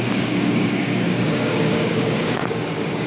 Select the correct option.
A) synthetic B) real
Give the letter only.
A